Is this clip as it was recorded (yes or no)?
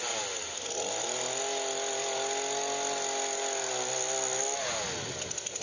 yes